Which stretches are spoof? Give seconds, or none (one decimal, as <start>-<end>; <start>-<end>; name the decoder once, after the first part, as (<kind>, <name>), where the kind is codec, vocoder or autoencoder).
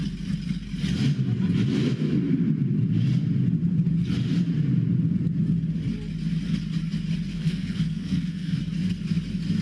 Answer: 7.3-8.6 (codec, SNAC)